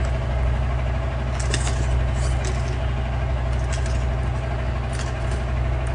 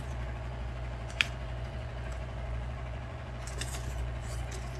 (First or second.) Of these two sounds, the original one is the first